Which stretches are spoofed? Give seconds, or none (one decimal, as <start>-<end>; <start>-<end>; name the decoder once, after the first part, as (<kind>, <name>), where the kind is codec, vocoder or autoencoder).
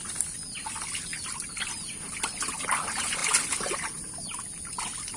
none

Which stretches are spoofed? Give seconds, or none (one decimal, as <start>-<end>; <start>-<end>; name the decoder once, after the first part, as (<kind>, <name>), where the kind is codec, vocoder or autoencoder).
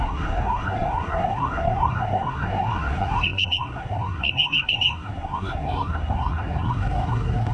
0.0-7.5 (codec, SNAC)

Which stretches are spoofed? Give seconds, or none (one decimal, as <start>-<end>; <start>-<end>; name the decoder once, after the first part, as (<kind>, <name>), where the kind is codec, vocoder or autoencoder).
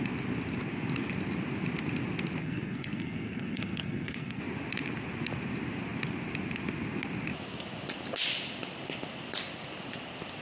2.4-4.4 (codec, SNAC)